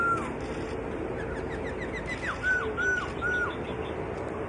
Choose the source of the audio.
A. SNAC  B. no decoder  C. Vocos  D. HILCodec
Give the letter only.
B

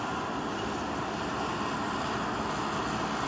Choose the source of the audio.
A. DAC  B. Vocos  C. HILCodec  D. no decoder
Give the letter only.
D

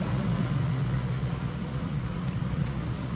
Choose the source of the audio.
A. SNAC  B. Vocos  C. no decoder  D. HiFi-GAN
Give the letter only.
B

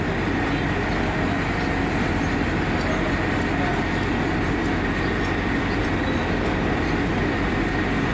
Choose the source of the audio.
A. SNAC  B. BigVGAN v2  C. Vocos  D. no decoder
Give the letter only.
D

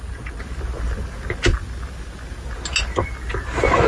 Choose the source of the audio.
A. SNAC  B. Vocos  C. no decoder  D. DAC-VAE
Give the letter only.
C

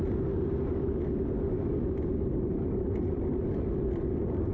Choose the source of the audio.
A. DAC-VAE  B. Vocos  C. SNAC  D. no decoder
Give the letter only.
D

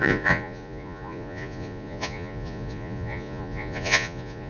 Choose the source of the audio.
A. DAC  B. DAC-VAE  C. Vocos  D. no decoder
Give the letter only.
C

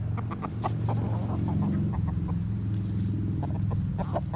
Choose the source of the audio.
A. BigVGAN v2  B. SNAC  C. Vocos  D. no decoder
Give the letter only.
D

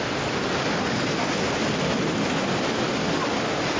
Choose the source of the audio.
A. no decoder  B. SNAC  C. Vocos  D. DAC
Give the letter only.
A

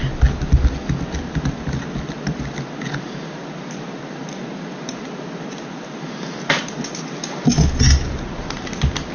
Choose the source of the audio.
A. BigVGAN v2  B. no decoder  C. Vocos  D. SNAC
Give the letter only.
B